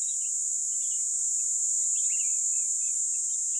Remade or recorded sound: recorded